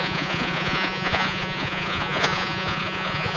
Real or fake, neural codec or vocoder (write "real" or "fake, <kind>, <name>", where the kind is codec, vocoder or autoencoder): fake, vocoder, Vocos